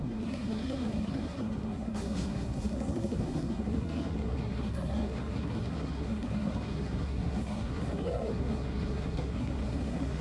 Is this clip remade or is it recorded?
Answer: remade